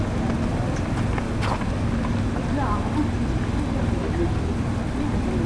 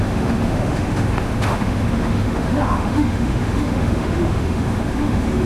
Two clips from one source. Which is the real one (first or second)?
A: first